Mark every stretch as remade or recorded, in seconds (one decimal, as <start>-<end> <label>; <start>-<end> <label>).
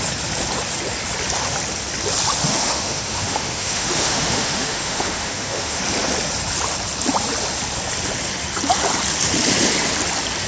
0.0-2.5 recorded; 2.5-5.8 remade; 5.8-10.5 recorded